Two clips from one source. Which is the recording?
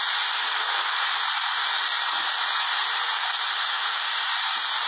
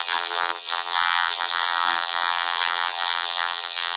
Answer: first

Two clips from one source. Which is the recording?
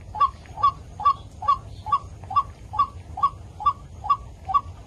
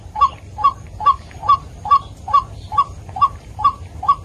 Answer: first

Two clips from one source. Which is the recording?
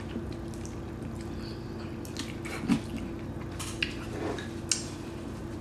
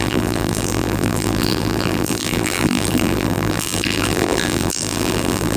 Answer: first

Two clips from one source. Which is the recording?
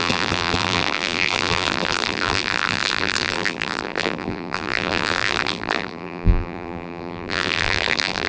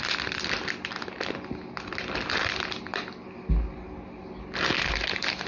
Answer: second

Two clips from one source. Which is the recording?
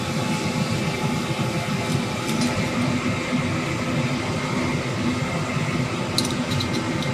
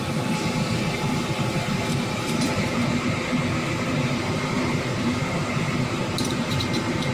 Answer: first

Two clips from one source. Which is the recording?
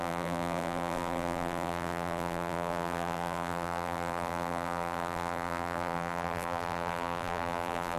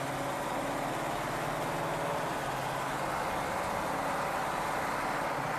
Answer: second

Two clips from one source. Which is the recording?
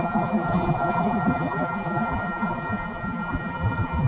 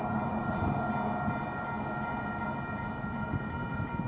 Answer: second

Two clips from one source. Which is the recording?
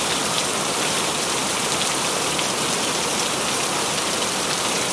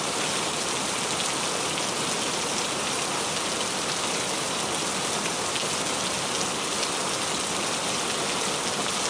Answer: second